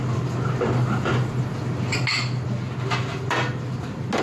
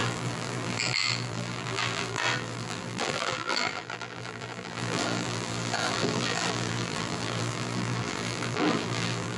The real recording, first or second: first